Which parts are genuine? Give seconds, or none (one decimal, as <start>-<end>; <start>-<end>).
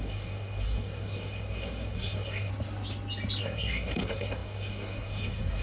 2.5-3.4